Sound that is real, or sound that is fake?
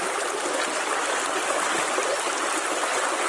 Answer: real